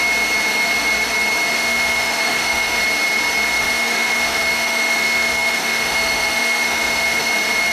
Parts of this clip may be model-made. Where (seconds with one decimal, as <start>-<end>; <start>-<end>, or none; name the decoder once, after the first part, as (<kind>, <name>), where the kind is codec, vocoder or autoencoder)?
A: 1.5-2.8 (autoencoder, DAC-VAE); 3.6-7.3